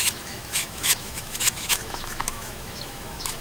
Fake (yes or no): yes